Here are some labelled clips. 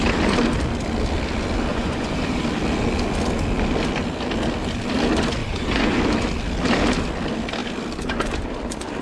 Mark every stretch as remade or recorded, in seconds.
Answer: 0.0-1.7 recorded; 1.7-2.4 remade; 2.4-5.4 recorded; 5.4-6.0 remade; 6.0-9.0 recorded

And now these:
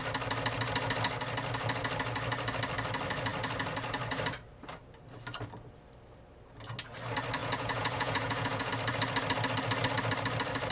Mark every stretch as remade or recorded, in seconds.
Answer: 0.0-7.4 recorded; 7.4-8.7 remade; 8.7-10.7 recorded

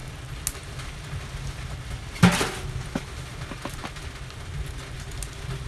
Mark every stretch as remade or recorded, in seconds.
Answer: 0.0-5.7 recorded

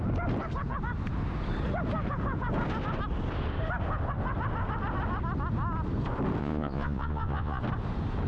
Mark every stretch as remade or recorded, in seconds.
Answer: 0.0-6.4 recorded; 6.4-7.6 remade; 7.6-8.3 recorded